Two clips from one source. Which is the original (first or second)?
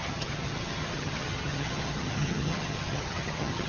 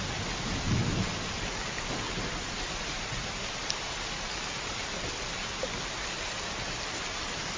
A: second